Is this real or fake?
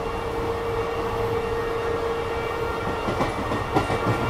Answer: real